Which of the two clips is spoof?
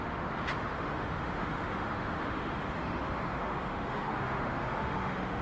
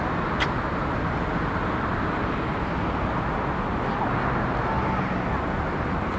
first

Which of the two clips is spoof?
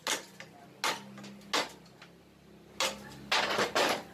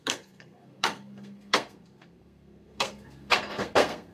second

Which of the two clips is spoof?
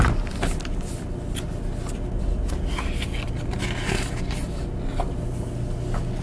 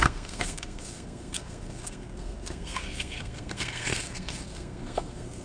second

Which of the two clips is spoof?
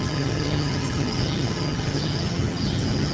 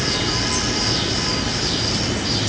first